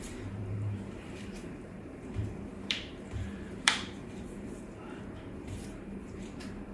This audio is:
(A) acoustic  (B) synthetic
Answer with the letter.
B